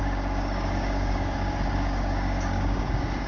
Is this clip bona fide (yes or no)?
no